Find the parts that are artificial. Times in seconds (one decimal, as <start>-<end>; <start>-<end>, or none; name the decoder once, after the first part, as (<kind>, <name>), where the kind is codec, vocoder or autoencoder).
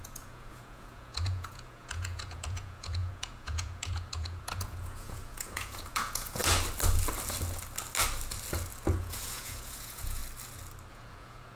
0.0-6.4 (vocoder, Vocos); 8.9-10.2; 10.9-11.6